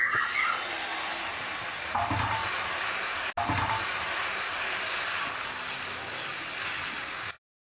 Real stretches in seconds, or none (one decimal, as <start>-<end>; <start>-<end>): 0.0-7.7